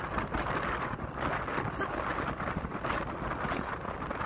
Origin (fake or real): real